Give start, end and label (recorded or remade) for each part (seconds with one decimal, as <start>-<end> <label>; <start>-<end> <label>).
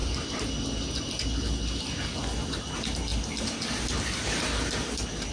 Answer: 0.0-5.3 recorded